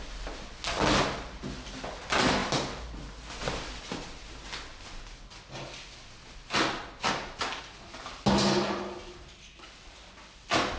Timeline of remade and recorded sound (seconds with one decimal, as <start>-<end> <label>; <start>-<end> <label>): 0.0-10.8 recorded